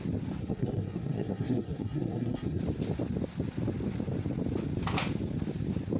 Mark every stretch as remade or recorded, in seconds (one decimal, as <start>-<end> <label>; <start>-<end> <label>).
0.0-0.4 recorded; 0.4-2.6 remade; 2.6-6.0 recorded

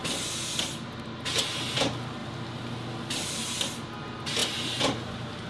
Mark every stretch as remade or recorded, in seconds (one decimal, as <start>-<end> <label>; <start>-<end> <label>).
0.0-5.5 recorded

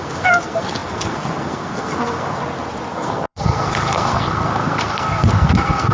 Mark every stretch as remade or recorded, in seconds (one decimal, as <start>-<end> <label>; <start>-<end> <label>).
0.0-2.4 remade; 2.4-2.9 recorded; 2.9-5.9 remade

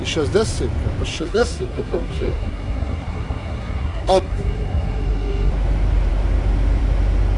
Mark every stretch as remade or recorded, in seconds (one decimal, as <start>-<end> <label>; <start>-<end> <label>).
0.0-1.1 recorded; 1.1-5.5 remade; 5.5-7.4 recorded

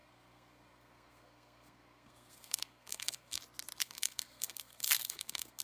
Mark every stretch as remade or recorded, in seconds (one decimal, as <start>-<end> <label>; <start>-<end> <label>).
0.0-3.4 remade; 3.4-3.8 recorded; 3.8-5.6 remade

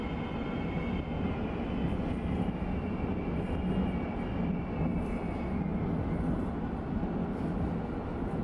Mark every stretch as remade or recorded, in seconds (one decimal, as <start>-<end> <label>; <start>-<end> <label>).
0.0-8.4 recorded

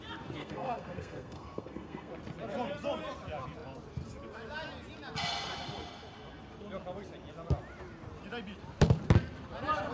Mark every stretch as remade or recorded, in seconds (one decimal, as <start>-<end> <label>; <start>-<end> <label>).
0.0-0.4 recorded; 0.4-2.1 remade; 2.1-9.9 recorded

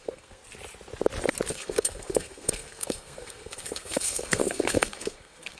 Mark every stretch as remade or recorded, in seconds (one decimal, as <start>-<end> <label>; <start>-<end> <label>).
0.0-0.4 remade; 0.4-1.5 recorded; 1.5-5.6 remade